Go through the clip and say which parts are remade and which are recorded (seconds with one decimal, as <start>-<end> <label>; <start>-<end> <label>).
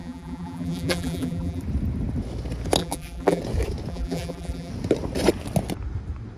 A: 0.0-1.6 remade; 1.6-2.8 recorded; 2.8-3.4 remade; 3.4-3.9 recorded; 3.9-4.7 remade; 4.7-6.4 recorded